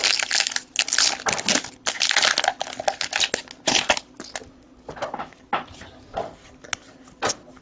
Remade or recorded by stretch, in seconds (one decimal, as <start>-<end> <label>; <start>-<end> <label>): 0.0-7.6 recorded